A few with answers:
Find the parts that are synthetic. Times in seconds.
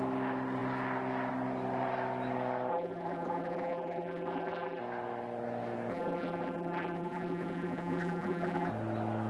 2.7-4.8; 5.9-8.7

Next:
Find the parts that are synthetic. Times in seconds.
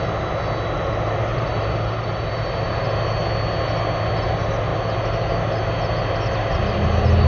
1.3-2.8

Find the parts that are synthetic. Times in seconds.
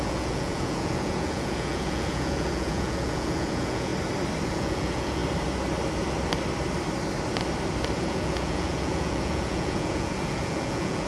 0.0-3.9; 4.5-5.2; 8.0-11.1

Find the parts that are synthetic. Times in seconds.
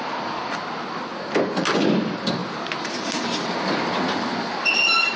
none